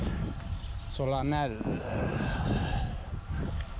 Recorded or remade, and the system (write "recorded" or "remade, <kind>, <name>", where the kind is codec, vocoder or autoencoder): recorded